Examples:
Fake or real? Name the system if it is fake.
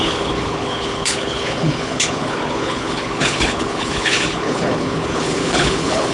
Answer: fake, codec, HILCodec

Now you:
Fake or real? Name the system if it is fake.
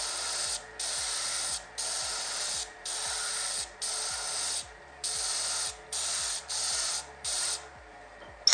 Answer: real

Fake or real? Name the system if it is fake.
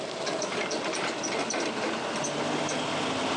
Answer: real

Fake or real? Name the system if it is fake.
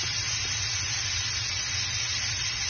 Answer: real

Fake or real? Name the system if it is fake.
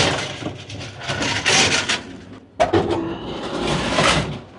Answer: real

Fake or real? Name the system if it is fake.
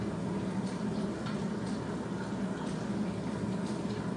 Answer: real